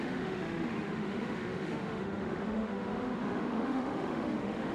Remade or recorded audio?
remade